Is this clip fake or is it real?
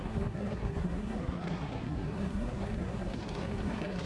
fake